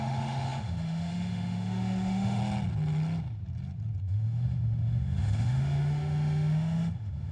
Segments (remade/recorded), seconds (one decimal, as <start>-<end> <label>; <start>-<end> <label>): 0.0-2.4 remade; 2.4-4.0 recorded; 4.0-7.3 remade